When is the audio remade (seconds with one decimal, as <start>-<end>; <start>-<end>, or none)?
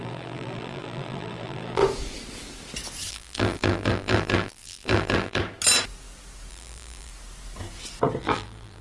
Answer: 0.0-1.8; 3.1-5.4; 6.5-7.1; 8.2-8.8